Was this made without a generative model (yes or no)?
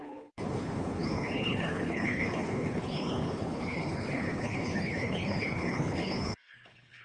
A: no